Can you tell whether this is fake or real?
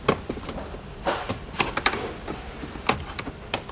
fake